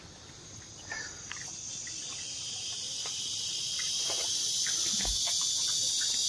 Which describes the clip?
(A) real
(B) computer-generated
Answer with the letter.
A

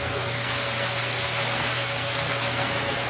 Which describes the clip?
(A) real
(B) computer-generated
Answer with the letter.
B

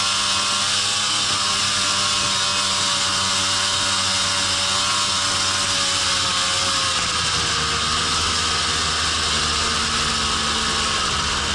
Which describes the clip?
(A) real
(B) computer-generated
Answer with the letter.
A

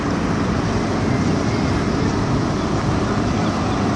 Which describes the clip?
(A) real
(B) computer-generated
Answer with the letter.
B